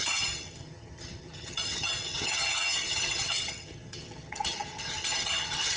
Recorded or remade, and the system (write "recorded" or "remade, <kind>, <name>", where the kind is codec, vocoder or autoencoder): remade, vocoder, HiFi-GAN